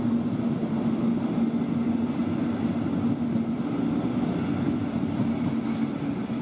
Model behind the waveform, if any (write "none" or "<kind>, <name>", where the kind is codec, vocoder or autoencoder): none